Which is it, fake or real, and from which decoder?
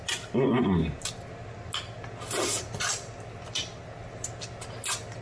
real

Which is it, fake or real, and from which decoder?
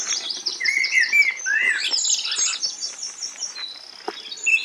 real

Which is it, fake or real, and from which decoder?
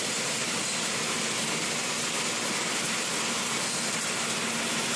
real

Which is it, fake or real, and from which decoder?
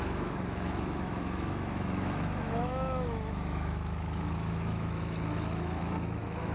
fake, autoencoder, DAC-VAE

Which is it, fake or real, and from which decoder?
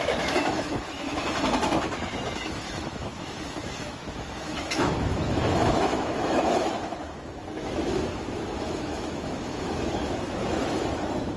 fake, autoencoder, DAC-VAE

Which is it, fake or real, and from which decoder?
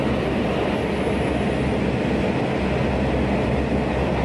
real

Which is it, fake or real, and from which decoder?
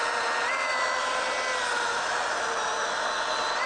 real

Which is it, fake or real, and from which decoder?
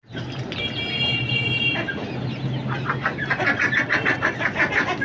real